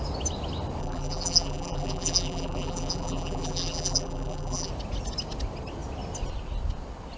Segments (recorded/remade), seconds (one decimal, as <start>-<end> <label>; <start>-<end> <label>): 0.0-0.8 recorded; 0.8-4.7 remade; 4.7-7.2 recorded